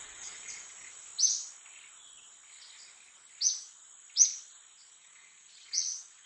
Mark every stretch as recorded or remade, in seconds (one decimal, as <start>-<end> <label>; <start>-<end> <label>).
0.0-1.1 remade; 1.1-4.9 recorded; 4.9-6.3 remade